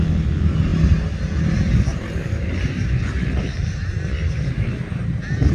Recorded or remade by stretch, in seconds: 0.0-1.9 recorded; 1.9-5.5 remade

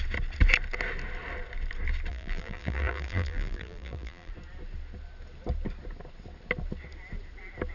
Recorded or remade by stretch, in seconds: 0.0-2.1 recorded; 2.1-4.3 remade; 4.3-7.7 recorded